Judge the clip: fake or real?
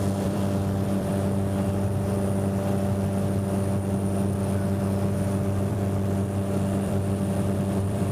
fake